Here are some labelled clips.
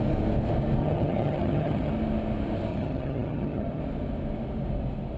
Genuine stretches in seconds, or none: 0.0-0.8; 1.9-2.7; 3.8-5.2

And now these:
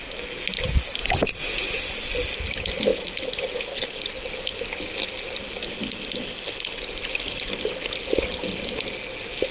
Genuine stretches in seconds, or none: 0.0-1.0; 1.8-9.5